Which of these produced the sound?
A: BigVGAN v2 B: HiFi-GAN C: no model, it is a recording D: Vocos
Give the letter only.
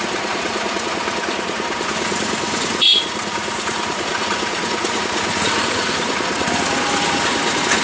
D